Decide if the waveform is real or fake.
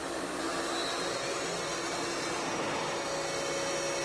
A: real